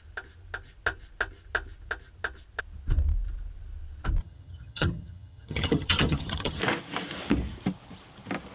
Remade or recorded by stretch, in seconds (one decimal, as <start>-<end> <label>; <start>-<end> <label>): 0.0-4.2 recorded; 4.2-6.6 remade; 6.6-8.5 recorded